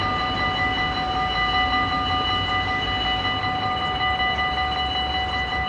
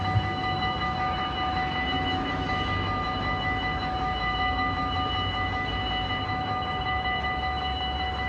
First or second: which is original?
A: first